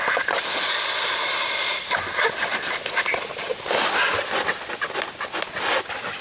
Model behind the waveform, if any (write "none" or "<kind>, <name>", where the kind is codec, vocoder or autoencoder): none